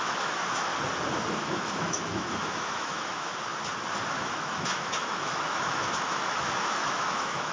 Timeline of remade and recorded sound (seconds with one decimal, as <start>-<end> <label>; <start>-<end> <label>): 0.0-0.7 remade; 0.7-1.3 recorded; 1.3-3.5 remade; 3.5-4.1 recorded; 4.1-7.5 remade